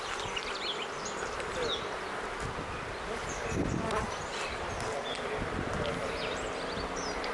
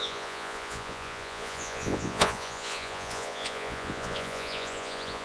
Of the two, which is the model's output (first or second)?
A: second